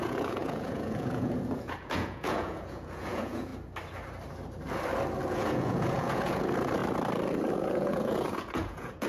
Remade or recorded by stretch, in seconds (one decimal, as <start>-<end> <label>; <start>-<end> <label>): 0.0-3.5 remade; 3.5-5.3 recorded; 5.3-6.8 remade; 6.8-7.5 recorded; 7.5-9.1 remade

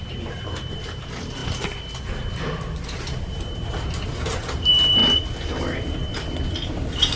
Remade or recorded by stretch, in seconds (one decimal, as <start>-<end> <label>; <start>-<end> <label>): 0.0-1.4 remade; 1.4-3.0 recorded; 3.0-5.0 remade; 5.0-5.6 recorded; 5.6-6.0 remade; 6.0-6.7 recorded; 6.7-7.2 remade

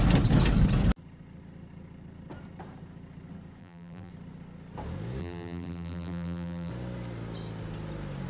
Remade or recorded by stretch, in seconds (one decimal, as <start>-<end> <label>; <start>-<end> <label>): 0.0-3.6 recorded; 3.6-4.1 remade; 4.1-5.2 recorded; 5.2-6.7 remade; 6.7-8.3 recorded

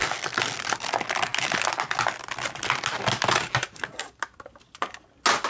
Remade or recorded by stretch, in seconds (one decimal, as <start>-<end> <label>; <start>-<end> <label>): 0.0-5.5 recorded

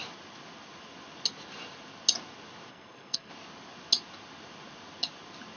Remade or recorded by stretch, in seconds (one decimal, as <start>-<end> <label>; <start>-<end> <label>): 0.0-2.7 recorded; 2.7-3.3 remade; 3.3-5.6 recorded

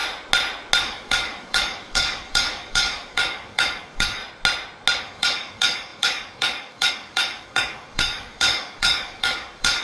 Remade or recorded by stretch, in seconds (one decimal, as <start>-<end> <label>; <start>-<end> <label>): 0.0-0.8 recorded; 0.8-4.2 remade; 4.2-5.0 recorded; 5.0-9.8 remade

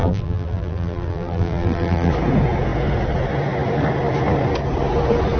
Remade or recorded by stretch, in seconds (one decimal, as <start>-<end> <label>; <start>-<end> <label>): 0.0-2.1 remade; 2.1-5.4 recorded

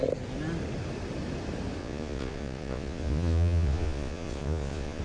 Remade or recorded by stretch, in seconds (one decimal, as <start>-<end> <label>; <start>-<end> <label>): 0.0-1.8 recorded; 1.8-5.0 remade